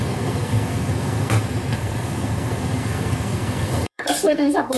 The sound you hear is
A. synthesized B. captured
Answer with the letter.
A